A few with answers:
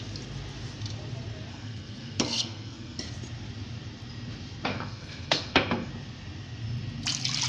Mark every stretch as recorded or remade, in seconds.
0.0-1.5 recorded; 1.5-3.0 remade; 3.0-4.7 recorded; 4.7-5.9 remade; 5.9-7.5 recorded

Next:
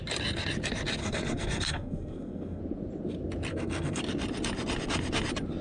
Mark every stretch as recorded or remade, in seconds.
0.0-1.0 recorded; 1.0-2.6 remade; 2.6-3.5 recorded; 3.5-4.0 remade; 4.0-5.6 recorded

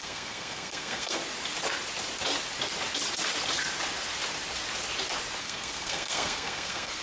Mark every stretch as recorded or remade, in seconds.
0.0-1.2 remade; 1.2-5.4 recorded; 5.4-7.0 remade

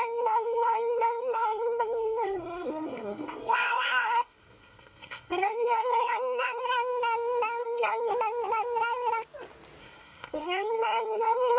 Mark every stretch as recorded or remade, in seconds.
0.0-6.6 remade; 6.6-7.6 recorded; 7.6-8.1 remade; 8.1-9.8 recorded; 9.8-11.6 remade